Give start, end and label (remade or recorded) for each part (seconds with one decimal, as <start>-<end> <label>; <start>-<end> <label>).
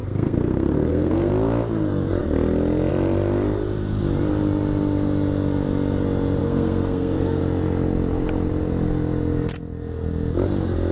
0.0-1.3 remade; 1.3-6.4 recorded; 6.4-7.4 remade; 7.4-10.9 recorded